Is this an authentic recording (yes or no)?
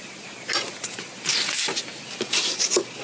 yes